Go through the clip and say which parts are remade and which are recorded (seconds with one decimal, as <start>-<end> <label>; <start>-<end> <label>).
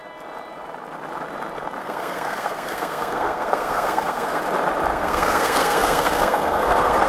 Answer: 0.0-1.8 recorded; 1.8-4.4 remade; 4.4-4.9 recorded; 4.9-7.1 remade